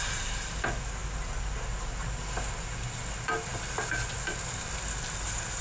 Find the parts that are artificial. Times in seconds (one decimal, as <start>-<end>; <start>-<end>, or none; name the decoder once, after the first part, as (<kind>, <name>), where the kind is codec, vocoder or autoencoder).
none